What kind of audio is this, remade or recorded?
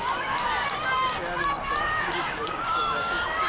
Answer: remade